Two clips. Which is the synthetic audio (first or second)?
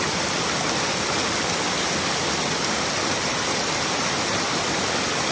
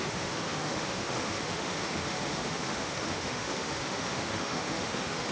second